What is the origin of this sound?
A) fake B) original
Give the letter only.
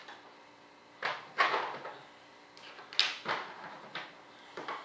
B